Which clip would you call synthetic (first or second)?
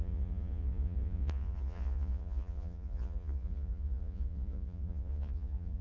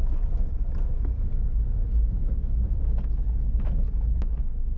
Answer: first